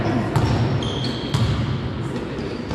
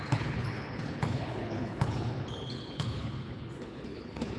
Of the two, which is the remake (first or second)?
second